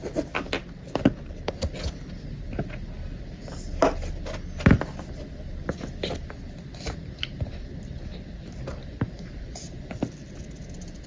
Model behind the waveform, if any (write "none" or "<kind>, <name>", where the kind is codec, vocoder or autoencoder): none